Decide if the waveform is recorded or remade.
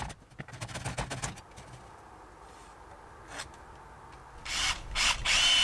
recorded